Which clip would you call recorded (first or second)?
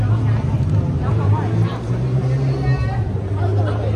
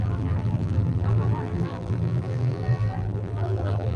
first